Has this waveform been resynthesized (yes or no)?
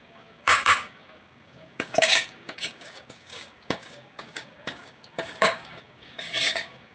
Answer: yes